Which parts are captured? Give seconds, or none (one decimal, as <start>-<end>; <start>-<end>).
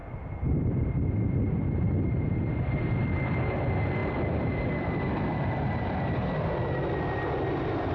0.0-7.9